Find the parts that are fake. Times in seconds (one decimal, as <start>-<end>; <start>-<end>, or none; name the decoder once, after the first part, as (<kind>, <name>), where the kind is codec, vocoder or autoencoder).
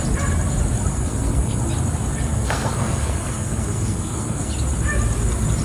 0.9-1.6 (codec, SNAC); 2.3-4.5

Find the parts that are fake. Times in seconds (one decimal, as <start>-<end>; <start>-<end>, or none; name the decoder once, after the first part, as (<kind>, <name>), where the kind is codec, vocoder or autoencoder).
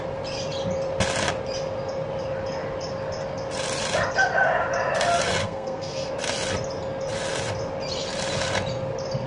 5.4-6.1 (codec, SNAC)